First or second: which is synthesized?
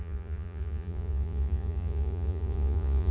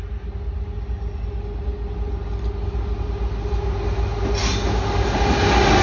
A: first